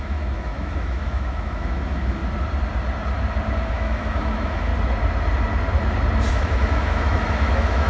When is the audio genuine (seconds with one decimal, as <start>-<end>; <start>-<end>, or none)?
2.2-3.7; 4.7-6.3